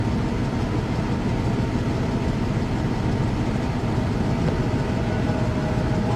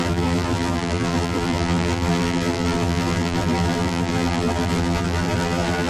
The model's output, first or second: second